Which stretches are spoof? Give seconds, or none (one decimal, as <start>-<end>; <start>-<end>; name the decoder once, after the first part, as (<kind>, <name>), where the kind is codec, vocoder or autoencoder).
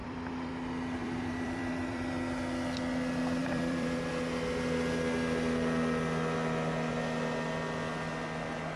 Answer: 0.0-0.5 (vocoder, BigVGAN v2); 1.0-2.1; 3.4-4.1